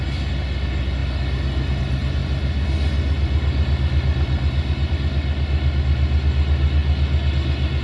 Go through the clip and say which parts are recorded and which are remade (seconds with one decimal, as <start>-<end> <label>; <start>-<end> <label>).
0.0-7.8 recorded